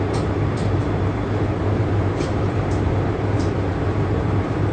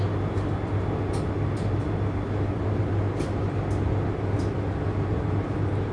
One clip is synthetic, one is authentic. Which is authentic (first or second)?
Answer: second